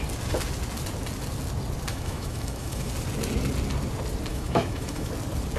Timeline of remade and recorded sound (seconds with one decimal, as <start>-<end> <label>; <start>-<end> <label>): 0.0-1.9 recorded; 1.9-2.9 remade; 2.9-4.3 recorded; 4.3-5.1 remade; 5.1-5.6 recorded

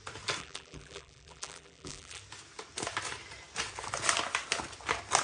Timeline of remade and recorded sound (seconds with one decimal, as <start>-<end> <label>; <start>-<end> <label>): 0.0-0.4 recorded; 0.4-2.2 remade; 2.2-5.2 recorded